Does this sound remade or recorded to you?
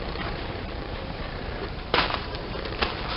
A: remade